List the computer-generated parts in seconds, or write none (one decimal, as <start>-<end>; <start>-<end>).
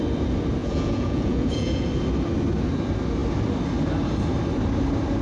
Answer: 0.6-1.9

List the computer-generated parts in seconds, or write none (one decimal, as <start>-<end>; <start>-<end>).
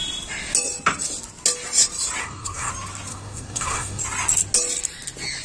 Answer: 2.2-2.7; 3.1-4.0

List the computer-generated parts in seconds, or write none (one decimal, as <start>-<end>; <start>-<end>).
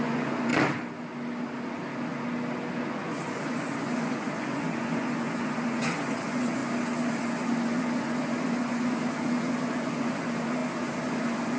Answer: 0.0-0.5; 2.8-6.6; 7.1-11.6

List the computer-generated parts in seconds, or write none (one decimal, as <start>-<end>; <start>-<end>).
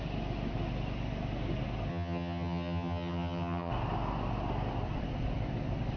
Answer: 1.9-3.7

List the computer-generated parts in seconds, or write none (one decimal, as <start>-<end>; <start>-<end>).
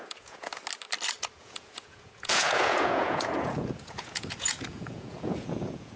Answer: 0.0-0.5; 1.4-6.0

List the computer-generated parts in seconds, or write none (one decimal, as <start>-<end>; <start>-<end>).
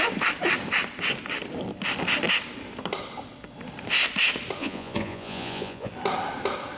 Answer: 4.6-5.9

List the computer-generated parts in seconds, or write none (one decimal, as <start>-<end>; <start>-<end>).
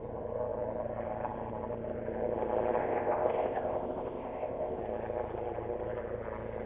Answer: 2.8-4.8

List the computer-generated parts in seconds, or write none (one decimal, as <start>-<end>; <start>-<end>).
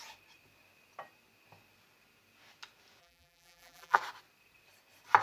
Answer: 3.0-4.0